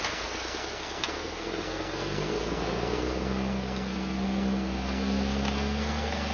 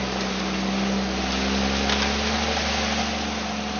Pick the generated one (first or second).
first